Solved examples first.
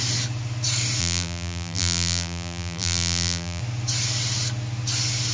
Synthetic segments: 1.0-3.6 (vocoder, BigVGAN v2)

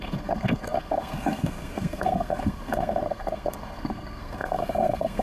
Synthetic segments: 0.0-5.2 (codec, SNAC)

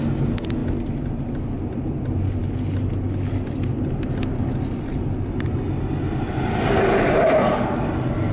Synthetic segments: none

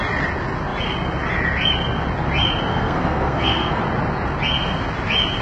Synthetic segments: 2.7-3.8 (codec, SNAC)